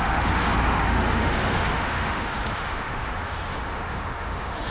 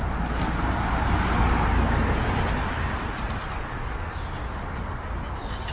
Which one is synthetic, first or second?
first